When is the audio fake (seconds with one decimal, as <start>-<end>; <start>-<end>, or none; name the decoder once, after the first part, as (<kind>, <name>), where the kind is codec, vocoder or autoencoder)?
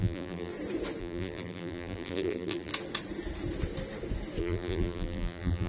0.0-0.5 (vocoder, BigVGAN v2); 1.0-2.7; 4.4-5.7